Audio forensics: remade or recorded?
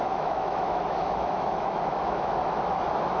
remade